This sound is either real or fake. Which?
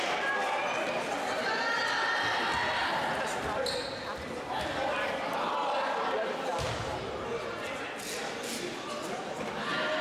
real